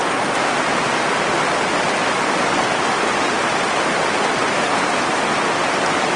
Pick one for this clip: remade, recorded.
recorded